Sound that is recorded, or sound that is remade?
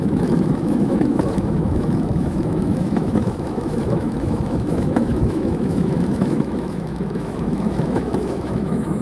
remade